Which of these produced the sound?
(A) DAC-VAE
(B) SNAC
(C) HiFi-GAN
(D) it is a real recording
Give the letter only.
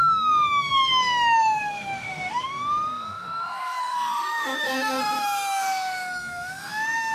A